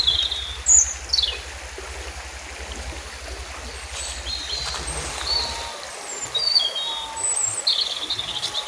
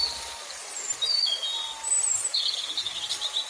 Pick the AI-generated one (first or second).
second